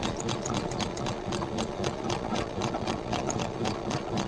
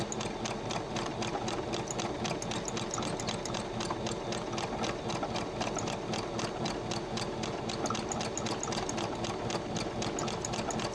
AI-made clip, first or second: first